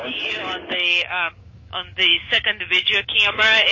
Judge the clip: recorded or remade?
remade